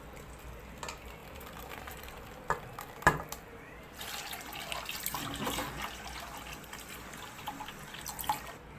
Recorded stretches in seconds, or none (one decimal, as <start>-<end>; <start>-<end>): 0.0-1.2; 6.0-8.8